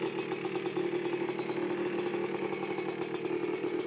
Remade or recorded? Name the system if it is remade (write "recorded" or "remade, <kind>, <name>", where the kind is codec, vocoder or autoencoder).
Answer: recorded